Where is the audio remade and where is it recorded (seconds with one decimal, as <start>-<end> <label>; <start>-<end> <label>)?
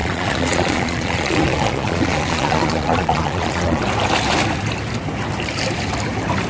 0.0-3.8 remade; 3.8-6.5 recorded